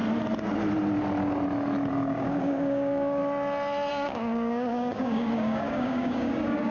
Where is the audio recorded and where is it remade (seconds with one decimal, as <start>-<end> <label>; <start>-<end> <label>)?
0.0-1.9 recorded; 1.9-3.2 remade; 3.2-3.9 recorded; 3.9-6.7 remade